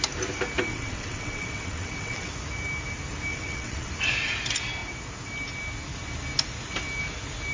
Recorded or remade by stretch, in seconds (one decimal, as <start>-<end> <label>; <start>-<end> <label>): 0.0-0.7 recorded; 0.7-2.3 remade; 2.3-3.3 recorded; 3.3-3.9 remade; 3.9-7.5 recorded